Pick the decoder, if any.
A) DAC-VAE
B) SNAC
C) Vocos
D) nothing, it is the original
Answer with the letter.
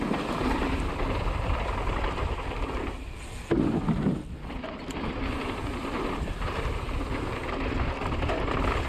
D